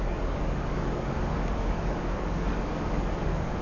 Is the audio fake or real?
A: fake